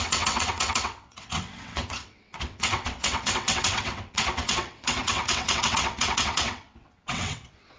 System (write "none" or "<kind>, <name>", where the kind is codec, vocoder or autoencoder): vocoder, WaveNeXt